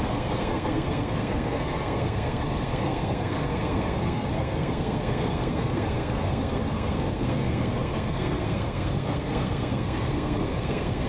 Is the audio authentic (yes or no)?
no